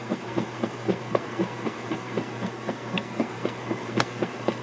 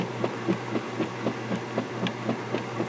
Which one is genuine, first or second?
second